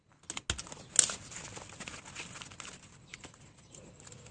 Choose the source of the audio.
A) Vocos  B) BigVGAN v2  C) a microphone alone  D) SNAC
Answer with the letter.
C